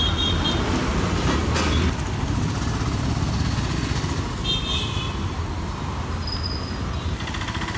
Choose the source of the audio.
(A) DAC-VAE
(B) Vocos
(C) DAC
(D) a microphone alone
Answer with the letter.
D